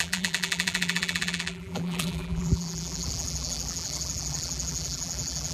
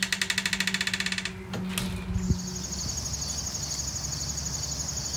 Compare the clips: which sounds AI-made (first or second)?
first